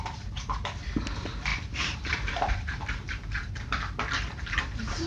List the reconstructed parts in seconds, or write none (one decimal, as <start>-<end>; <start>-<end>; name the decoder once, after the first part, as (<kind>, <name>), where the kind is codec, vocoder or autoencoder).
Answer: 0.0-5.1 (vocoder, BigVGAN v2)